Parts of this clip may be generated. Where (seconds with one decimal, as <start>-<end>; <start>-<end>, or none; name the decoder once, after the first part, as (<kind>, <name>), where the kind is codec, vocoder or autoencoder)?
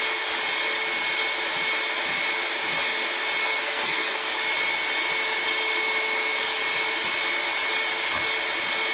3.4-4.3 (codec, SNAC)